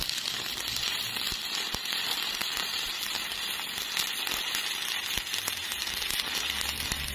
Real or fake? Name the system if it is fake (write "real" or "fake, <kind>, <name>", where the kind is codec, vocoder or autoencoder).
real